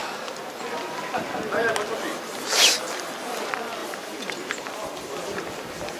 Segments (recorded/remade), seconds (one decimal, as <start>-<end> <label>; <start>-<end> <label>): 0.0-1.3 remade; 1.3-3.8 recorded; 3.8-6.0 remade